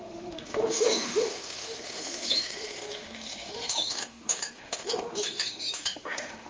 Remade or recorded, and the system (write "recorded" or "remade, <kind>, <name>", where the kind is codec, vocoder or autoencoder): remade, autoencoder, DAC-VAE